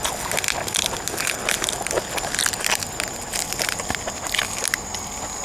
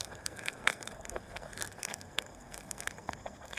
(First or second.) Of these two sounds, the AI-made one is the second